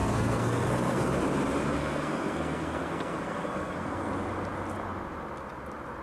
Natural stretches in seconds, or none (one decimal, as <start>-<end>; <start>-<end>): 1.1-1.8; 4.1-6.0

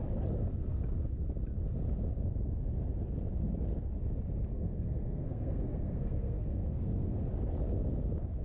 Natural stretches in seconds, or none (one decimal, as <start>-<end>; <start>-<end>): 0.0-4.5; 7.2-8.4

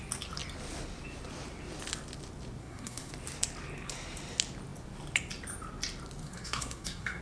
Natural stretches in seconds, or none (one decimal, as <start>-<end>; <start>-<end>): 0.0-2.6; 3.1-6.2

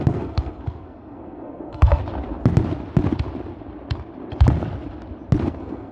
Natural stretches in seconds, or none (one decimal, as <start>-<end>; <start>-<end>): 2.0-5.5